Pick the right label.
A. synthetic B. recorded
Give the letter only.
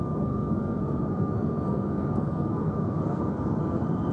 A